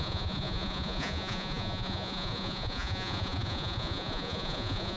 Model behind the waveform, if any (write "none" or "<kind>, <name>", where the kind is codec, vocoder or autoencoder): vocoder, Vocos